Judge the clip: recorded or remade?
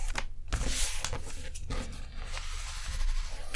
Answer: recorded